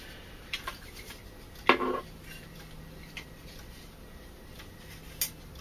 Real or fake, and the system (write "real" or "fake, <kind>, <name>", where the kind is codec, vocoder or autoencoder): real